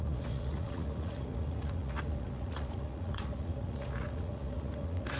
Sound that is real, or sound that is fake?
fake